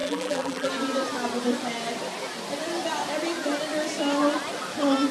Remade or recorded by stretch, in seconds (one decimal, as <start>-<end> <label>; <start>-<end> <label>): 0.0-0.7 remade; 0.7-5.1 recorded